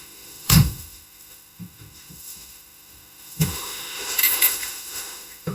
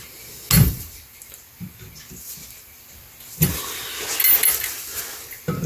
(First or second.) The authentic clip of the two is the second